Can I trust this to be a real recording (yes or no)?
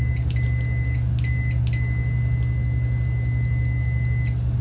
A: yes